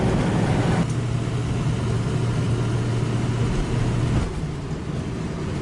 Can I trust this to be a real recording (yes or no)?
yes